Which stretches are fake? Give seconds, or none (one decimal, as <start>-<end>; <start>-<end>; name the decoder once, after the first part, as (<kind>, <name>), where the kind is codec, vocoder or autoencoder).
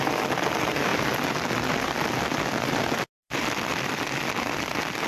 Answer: none